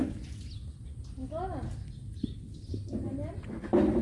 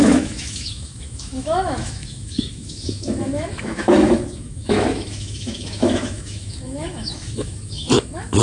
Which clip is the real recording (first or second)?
first